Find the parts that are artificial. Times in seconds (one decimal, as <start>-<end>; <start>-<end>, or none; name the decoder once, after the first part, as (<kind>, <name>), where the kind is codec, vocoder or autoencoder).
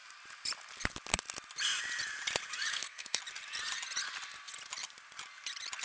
2.7-3.2 (codec, SNAC)